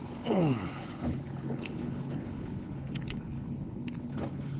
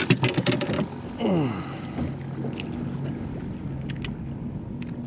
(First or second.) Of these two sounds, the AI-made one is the first